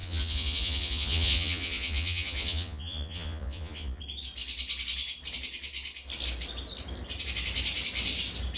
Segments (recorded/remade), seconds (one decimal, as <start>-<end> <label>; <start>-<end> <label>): 0.0-4.0 remade; 4.0-8.6 recorded